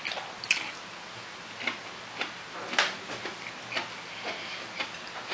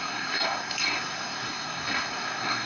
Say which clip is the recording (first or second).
first